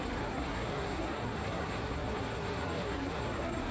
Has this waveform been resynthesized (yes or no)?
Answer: yes